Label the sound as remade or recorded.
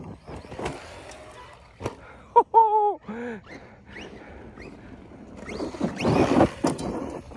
recorded